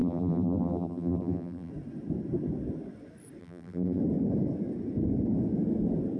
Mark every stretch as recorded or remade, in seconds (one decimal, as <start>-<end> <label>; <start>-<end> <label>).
0.0-1.7 remade; 1.7-3.4 recorded; 3.4-4.0 remade; 4.0-6.2 recorded